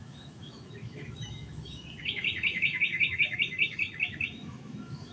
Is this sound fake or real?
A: fake